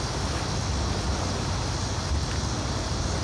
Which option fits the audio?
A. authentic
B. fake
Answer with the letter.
A